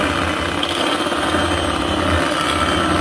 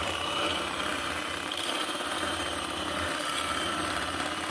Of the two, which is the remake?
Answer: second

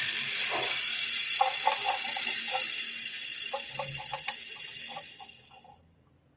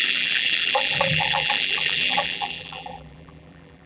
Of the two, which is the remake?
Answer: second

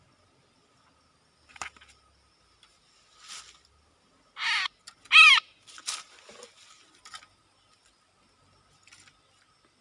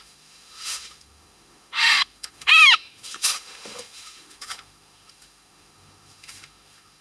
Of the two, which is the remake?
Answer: second